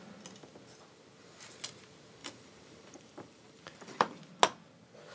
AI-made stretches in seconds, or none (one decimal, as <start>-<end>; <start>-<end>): 2.2-4.2